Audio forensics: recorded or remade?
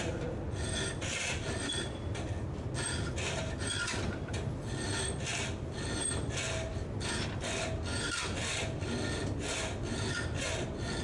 recorded